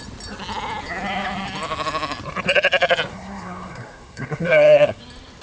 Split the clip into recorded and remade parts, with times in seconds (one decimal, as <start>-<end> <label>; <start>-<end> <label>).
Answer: 0.0-3.1 recorded; 3.1-5.0 remade; 5.0-5.4 recorded